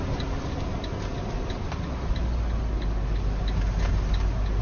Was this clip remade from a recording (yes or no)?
no